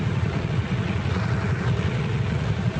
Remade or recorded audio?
remade